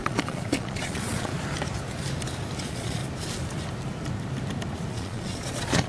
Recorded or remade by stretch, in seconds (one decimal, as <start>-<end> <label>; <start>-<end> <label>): 0.0-1.3 remade; 1.3-2.6 recorded; 2.6-3.0 remade; 3.0-4.9 recorded; 4.9-5.9 remade